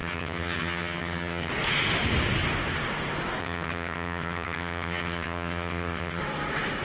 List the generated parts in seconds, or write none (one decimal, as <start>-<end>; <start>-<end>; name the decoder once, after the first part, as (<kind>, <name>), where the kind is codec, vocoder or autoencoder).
0.0-1.5 (vocoder, HiFi-GAN); 3.4-6.2